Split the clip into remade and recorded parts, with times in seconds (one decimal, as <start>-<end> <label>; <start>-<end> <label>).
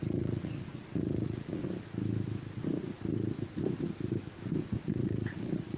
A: 0.0-1.6 remade; 1.6-4.8 recorded; 4.8-5.8 remade